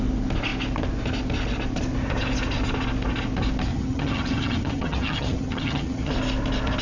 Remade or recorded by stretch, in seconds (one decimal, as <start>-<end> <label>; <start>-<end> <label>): 0.0-3.7 recorded; 3.7-6.1 remade; 6.1-6.8 recorded